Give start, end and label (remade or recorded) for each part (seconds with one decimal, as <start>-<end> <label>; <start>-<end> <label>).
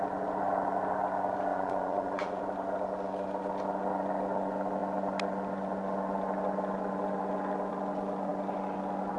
0.0-1.5 recorded; 1.5-2.4 remade; 2.4-9.2 recorded